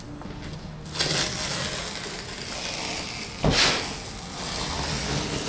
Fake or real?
real